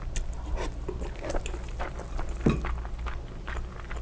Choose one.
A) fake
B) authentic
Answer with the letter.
B